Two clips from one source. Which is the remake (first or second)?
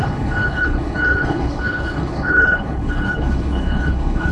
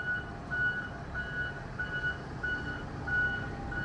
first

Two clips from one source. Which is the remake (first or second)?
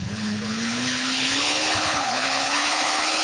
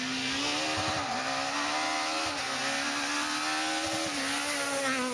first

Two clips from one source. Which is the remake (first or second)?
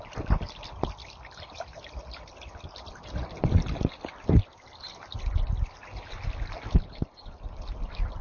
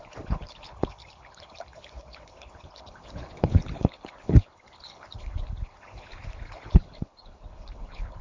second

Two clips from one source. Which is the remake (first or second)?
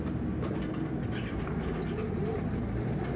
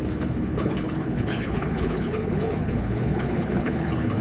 second